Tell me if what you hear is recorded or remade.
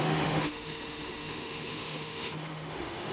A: remade